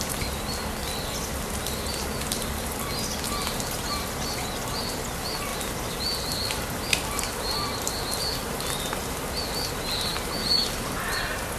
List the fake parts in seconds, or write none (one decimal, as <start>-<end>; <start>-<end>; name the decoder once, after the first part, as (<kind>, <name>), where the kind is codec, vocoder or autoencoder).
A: none